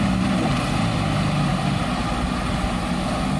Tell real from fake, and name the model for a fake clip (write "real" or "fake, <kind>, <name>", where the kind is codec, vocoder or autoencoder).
real